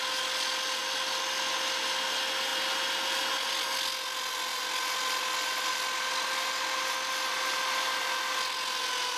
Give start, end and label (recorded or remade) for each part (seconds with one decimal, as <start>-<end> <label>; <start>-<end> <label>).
0.0-9.2 recorded